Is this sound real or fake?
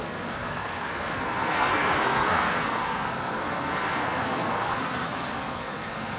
fake